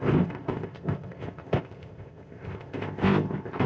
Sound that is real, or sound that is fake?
fake